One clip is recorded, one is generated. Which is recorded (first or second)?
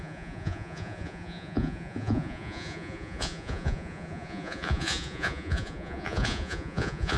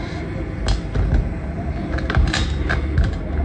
second